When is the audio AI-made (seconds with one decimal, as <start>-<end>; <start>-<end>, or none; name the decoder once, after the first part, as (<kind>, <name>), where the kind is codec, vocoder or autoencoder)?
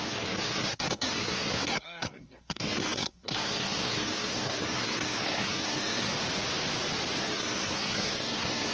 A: 0.0-6.1 (codec, SNAC); 7.2-8.7